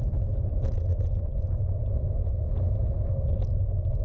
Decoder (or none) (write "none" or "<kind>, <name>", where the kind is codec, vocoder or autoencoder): none